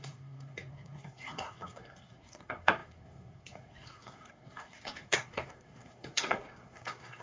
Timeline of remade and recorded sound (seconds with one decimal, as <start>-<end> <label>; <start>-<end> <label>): 0.0-7.2 remade